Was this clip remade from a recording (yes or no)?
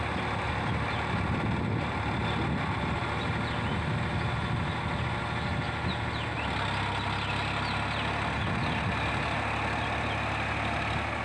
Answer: no